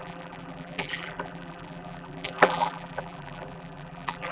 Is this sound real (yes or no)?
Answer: no